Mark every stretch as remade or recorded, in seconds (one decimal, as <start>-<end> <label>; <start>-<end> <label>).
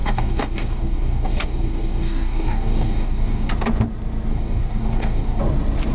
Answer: 0.0-3.5 remade; 3.5-4.3 recorded; 4.3-5.4 remade; 5.4-5.9 recorded